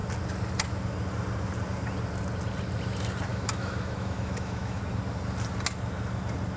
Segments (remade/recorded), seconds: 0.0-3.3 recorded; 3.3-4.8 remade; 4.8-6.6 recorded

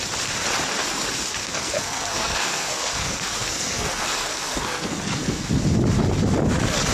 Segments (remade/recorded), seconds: 0.0-1.4 recorded; 1.4-5.5 remade; 5.5-6.9 recorded

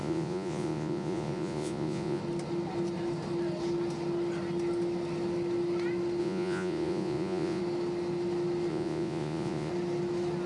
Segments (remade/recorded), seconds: 0.0-2.2 remade; 2.2-6.2 recorded; 6.2-7.6 remade; 7.6-8.7 recorded; 8.7-9.7 remade; 9.7-10.5 recorded